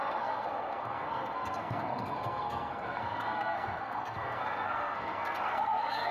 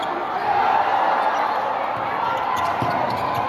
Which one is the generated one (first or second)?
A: first